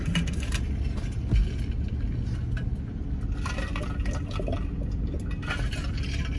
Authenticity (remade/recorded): recorded